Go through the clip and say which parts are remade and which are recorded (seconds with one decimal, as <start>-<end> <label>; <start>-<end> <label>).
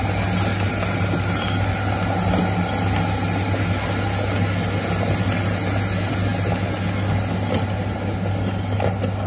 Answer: 0.0-9.3 recorded